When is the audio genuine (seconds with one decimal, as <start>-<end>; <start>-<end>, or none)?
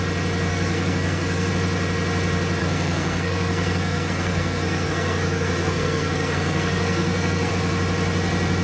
0.0-0.5; 1.5-2.6; 7.5-8.6